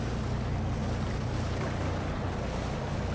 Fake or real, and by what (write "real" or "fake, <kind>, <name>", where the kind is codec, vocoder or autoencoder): real